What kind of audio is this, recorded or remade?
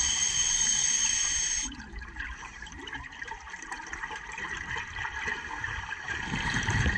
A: remade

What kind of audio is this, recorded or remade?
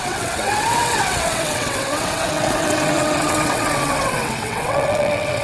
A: remade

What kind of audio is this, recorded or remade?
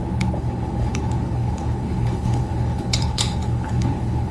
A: remade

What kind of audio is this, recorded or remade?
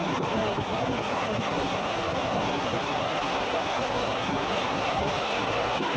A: remade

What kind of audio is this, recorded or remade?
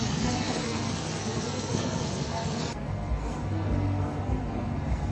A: remade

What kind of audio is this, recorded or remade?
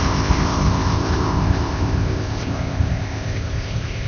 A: remade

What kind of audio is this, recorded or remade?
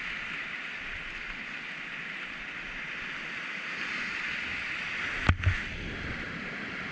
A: recorded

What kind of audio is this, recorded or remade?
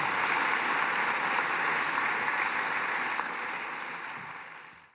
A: recorded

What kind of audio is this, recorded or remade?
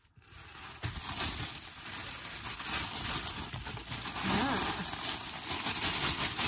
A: recorded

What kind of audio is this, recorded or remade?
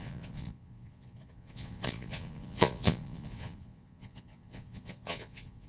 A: remade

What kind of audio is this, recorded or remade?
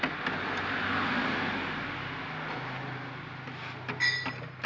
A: recorded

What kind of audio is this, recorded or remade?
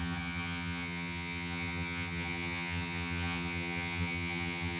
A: remade